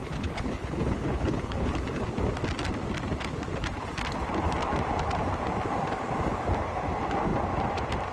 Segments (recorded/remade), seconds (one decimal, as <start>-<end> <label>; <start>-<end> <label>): 0.0-2.0 remade; 2.0-8.1 recorded